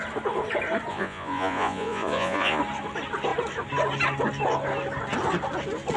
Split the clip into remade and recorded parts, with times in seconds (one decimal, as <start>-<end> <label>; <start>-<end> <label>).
0.0-0.9 recorded; 0.9-2.6 remade; 2.6-6.0 recorded